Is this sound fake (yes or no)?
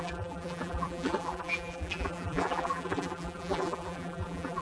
yes